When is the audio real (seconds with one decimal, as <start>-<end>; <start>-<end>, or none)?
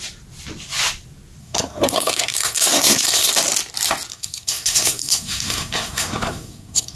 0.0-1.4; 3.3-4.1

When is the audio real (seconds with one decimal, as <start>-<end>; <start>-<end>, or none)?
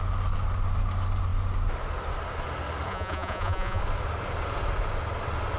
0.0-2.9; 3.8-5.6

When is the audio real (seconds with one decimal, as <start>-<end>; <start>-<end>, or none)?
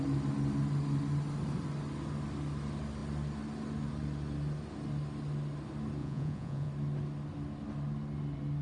0.0-6.0; 6.7-8.6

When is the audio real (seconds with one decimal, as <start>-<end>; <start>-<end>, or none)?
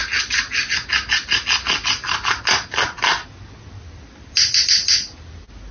0.0-5.7